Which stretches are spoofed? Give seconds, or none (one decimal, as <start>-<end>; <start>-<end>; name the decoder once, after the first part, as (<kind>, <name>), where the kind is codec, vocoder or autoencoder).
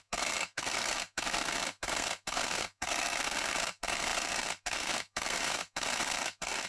0.0-6.7 (codec, SNAC)